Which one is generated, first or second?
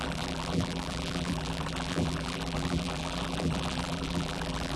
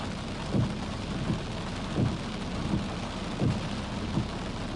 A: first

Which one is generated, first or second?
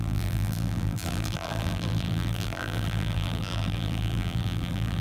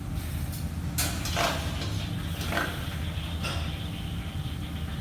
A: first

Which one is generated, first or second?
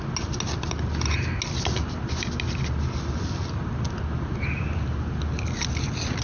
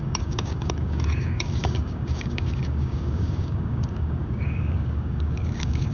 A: second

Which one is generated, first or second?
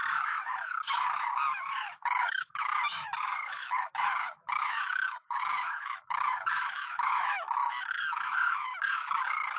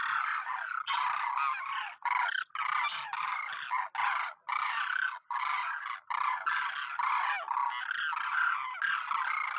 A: first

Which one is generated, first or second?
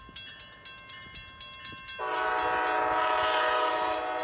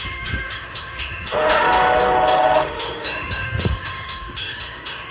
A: second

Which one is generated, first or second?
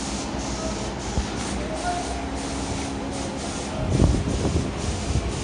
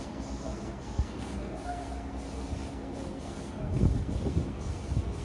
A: second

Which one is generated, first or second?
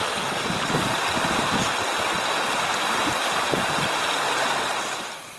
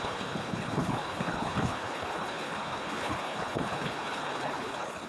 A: second